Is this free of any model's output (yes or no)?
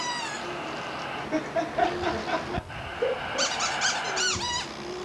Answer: yes